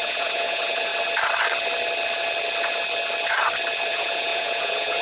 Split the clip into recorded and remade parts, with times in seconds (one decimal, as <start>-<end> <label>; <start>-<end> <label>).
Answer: 0.0-0.9 remade; 0.9-3.9 recorded; 3.9-5.0 remade